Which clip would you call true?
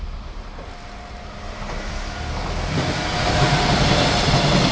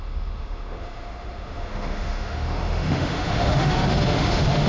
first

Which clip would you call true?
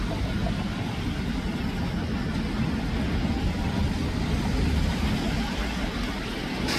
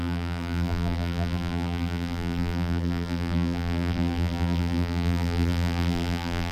first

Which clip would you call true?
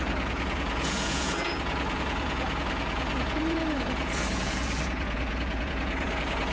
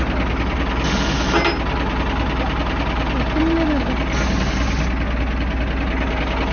second